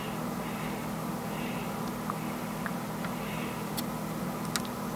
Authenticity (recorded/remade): recorded